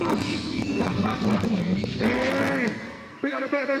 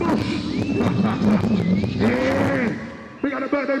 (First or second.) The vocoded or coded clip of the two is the first